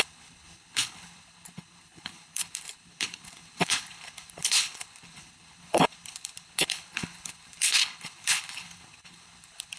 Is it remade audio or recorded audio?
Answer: remade